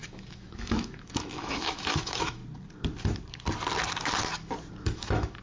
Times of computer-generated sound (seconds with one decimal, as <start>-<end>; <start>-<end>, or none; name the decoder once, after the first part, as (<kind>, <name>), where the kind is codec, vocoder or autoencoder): 0.0-2.4 (autoencoder, DAC-VAE); 4.8-5.4